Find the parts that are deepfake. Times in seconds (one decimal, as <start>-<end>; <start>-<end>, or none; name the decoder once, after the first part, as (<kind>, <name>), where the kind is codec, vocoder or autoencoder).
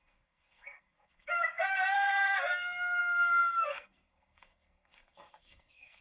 0.0-6.0 (codec, SNAC)